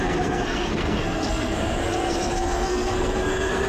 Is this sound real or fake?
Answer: fake